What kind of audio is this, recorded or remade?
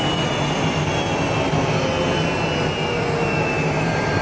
recorded